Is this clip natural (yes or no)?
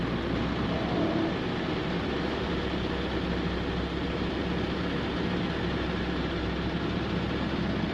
yes